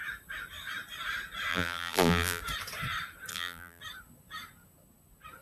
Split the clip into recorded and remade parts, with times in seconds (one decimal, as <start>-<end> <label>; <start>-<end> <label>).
0.0-1.5 recorded; 1.5-2.4 remade; 2.4-3.3 recorded; 3.3-3.8 remade; 3.8-5.4 recorded